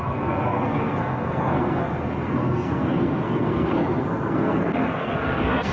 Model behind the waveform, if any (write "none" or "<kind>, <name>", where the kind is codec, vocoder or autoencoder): codec, SNAC